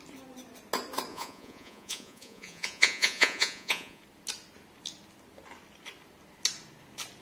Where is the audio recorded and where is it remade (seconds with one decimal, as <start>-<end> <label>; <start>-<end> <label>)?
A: 0.0-1.1 recorded; 1.1-4.0 remade; 4.0-7.2 recorded